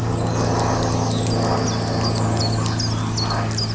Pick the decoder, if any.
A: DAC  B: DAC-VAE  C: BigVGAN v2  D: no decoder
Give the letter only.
D